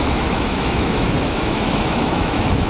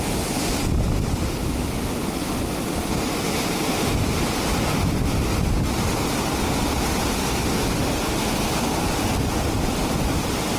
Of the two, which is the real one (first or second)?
second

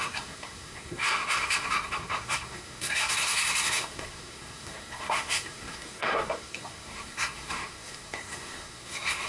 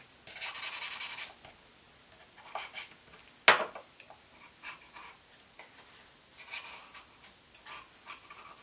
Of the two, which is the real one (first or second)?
second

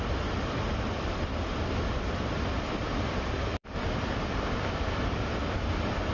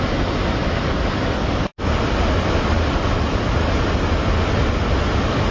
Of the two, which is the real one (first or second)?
second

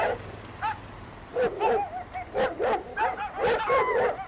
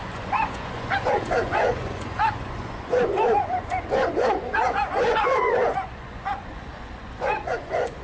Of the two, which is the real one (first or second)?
first